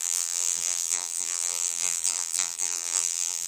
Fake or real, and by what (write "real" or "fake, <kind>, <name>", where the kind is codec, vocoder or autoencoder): fake, vocoder, BigVGAN v2